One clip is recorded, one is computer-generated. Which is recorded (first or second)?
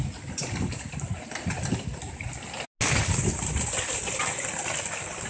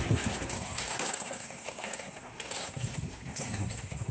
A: first